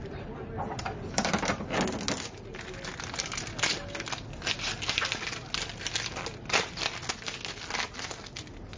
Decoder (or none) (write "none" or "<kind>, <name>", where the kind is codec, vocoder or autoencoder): none